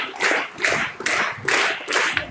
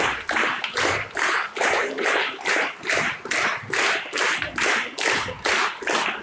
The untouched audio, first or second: first